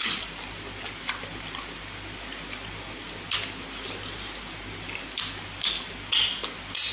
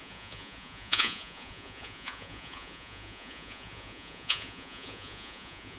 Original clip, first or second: first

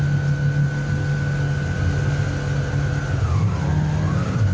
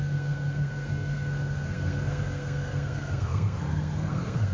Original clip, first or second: first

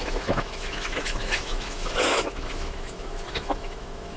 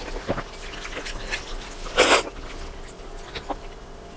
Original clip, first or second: second